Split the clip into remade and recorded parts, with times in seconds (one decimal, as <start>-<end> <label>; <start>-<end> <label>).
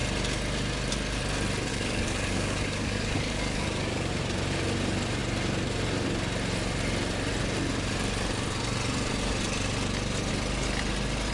0.0-1.7 recorded; 1.7-4.1 remade; 4.1-11.3 recorded